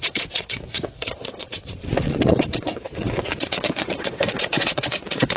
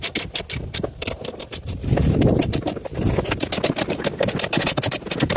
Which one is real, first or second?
second